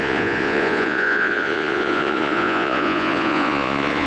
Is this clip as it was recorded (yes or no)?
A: no